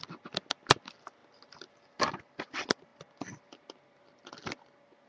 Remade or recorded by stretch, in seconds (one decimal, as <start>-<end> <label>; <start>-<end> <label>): 0.0-5.1 recorded